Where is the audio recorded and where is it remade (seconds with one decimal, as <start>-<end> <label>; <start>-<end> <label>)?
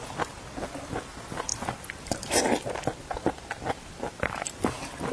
0.0-5.1 recorded